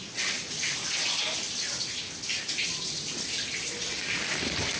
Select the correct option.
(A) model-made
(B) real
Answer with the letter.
B